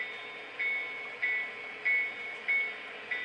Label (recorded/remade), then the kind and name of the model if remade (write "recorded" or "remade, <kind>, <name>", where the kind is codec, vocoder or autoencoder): recorded